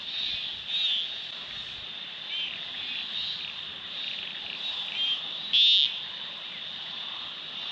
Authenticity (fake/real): real